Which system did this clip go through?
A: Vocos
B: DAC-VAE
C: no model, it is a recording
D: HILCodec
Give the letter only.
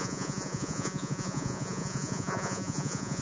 A